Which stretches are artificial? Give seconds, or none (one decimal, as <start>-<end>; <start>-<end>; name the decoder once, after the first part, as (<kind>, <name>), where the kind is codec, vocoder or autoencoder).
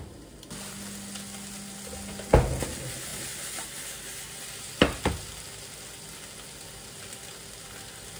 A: none